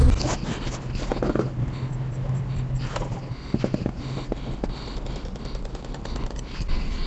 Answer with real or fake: real